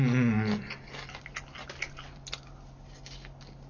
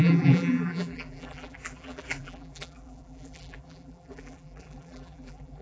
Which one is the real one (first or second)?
first